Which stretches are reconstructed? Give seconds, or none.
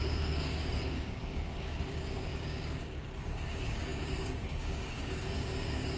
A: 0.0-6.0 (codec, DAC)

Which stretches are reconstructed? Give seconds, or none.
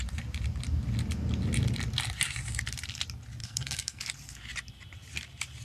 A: 3.4-4.0 (codec, SNAC)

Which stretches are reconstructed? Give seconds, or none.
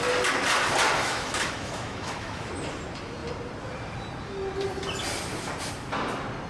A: 1.0-2.5 (autoencoder, DAC-VAE)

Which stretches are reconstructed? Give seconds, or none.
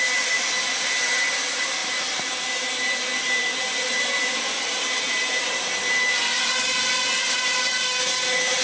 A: 1.8-5.4 (vocoder, BigVGAN v2)